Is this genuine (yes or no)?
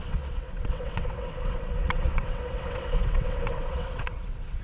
no